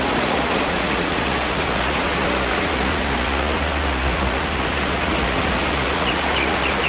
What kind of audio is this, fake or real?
fake